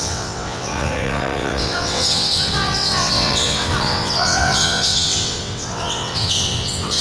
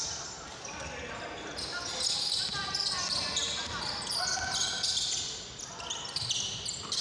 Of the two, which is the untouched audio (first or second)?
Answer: second